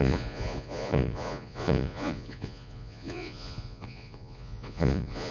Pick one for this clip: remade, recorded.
remade